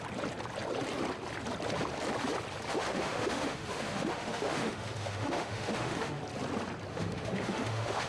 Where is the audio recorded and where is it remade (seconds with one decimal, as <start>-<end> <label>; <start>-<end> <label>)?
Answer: 0.0-2.7 recorded; 2.7-6.2 remade; 6.2-6.9 recorded; 6.9-8.1 remade